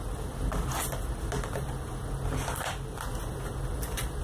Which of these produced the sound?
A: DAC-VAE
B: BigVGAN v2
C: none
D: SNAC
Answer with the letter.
C